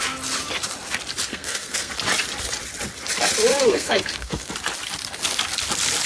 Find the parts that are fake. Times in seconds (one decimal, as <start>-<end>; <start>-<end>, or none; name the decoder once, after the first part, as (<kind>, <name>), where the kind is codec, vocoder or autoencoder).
1.3-1.9 (codec, SNAC); 3.5-4.5